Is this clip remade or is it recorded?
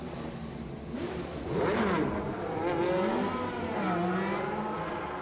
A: recorded